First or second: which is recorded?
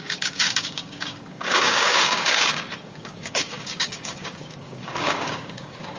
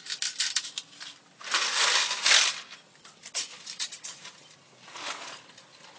second